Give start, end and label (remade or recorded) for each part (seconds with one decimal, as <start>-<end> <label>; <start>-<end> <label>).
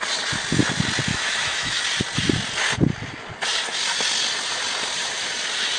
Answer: 0.0-1.1 recorded; 1.1-1.8 remade; 1.8-5.8 recorded